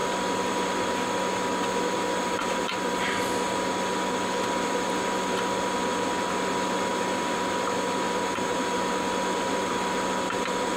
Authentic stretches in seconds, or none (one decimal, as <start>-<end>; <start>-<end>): 0.0-10.8